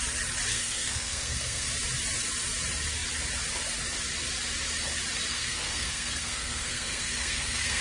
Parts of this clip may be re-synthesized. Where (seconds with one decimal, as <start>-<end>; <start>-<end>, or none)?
0.5-1.7; 5.3-7.8

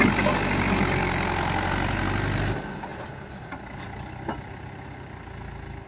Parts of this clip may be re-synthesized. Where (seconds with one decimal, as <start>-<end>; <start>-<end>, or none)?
none

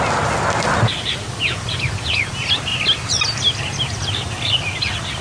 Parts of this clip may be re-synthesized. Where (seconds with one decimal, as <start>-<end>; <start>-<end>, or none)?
none

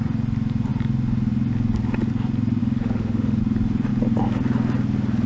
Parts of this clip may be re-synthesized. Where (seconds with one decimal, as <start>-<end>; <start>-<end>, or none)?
2.6-3.4

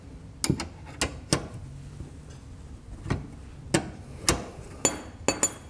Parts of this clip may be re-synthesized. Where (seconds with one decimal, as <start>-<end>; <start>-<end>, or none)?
none